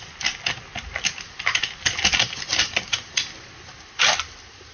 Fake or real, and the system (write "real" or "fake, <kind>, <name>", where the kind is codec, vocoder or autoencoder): real